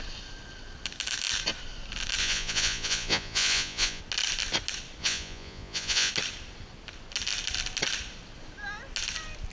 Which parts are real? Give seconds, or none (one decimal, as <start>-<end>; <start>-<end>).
0.0-2.2; 4.0-5.0; 6.1-9.5